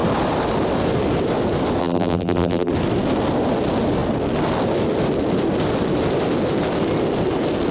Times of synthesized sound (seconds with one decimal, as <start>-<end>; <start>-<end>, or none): 1.8-2.7